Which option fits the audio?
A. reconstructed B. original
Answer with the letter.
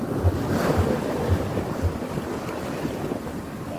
A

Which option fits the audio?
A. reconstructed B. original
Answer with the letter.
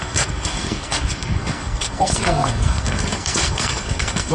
A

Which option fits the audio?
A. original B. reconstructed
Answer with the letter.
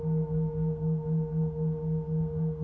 B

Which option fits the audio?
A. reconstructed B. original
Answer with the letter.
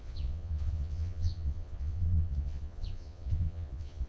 A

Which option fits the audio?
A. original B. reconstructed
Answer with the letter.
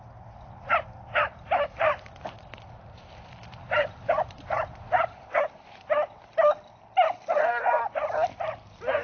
B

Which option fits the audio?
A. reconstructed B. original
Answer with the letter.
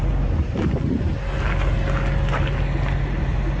B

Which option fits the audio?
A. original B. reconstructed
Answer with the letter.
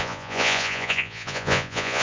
B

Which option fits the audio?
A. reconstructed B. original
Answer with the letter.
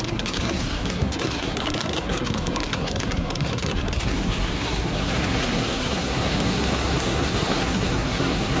A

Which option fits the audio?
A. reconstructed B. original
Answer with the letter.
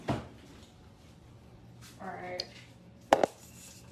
B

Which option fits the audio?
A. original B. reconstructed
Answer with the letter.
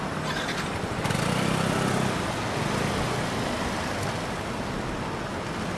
A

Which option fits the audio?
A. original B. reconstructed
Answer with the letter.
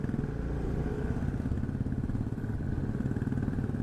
A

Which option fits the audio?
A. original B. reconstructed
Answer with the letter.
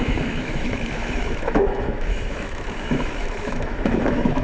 B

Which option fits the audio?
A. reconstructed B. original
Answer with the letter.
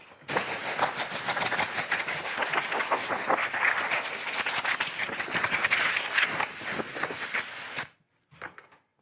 B